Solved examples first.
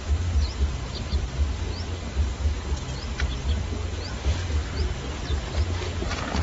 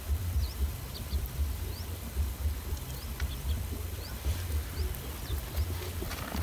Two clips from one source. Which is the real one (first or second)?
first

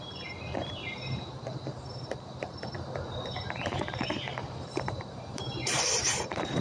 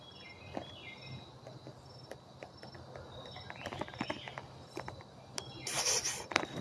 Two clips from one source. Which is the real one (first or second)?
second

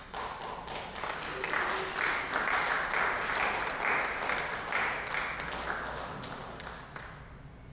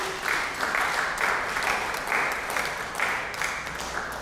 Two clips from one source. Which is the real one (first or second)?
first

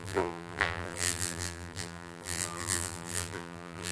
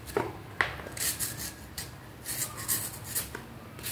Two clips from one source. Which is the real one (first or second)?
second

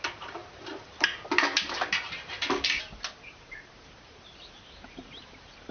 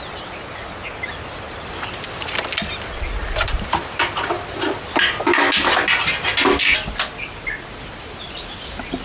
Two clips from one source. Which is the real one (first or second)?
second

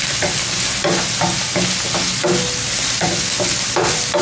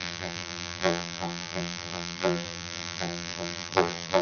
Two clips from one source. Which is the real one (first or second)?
first